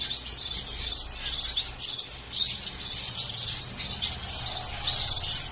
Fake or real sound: real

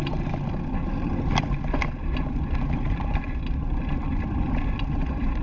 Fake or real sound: real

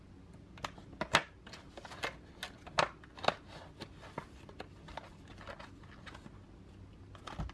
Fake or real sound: real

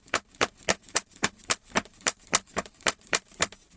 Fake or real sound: fake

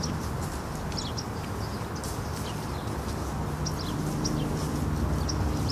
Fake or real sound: real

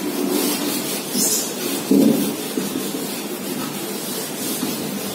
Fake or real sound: real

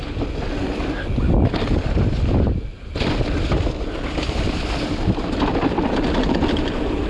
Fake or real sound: real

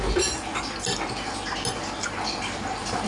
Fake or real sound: real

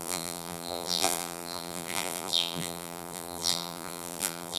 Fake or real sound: fake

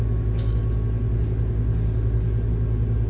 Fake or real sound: real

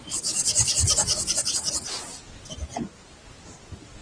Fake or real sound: real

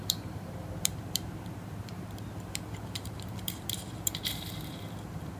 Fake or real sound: fake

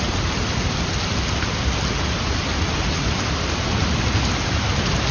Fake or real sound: real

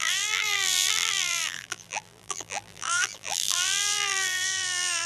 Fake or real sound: fake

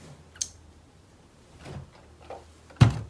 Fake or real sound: real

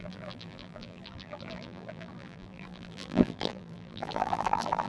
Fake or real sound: fake